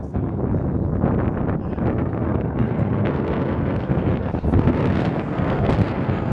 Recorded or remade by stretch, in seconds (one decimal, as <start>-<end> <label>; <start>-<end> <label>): 0.0-0.4 remade; 0.4-1.9 recorded; 1.9-6.3 remade